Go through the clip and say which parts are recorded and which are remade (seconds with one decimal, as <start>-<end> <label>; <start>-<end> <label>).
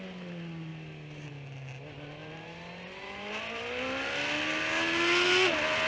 0.0-5.9 recorded